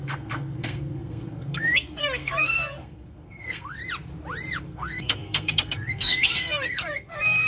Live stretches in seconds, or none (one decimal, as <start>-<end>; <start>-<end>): 3.8-4.6